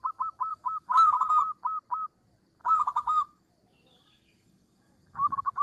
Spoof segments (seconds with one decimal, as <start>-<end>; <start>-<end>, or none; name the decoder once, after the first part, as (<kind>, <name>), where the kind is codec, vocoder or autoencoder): 0.5-1.3 (codec, DAC); 2.6-3.5; 3.9-5.6